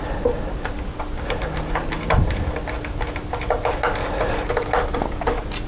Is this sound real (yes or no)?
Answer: yes